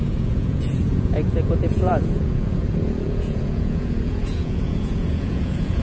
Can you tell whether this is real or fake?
fake